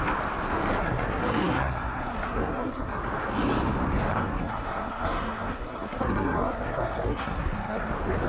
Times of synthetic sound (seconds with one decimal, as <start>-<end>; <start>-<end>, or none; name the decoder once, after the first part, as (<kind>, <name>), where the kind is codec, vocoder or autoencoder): 0.8-3.0 (codec, SNAC); 4.1-7.9